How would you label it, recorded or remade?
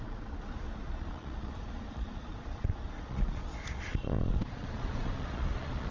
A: remade